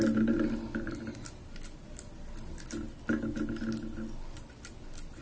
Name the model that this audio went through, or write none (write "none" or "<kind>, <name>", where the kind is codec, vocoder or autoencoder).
none